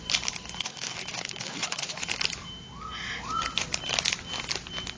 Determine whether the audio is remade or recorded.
recorded